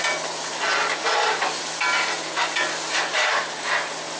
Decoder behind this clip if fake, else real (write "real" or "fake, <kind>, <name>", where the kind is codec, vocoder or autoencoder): real